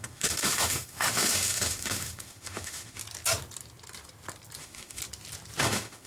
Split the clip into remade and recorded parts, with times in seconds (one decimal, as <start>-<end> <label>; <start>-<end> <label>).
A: 0.0-3.0 remade; 3.0-4.6 recorded; 4.6-5.0 remade; 5.0-5.6 recorded; 5.6-6.1 remade